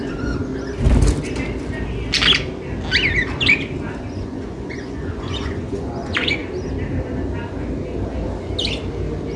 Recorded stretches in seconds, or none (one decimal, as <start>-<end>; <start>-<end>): 0.5-4.0; 6.4-9.4